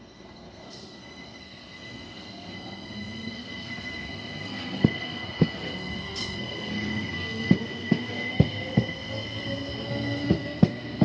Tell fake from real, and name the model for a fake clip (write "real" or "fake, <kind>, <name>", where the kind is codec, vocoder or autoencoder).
fake, codec, SNAC